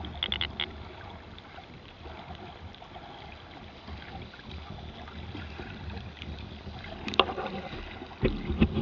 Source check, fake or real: real